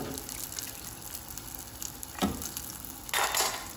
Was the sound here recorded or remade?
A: recorded